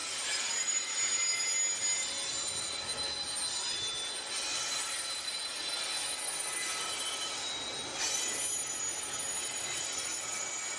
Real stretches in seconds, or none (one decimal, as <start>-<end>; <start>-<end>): 0.0-10.8